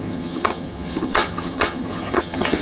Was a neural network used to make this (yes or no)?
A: yes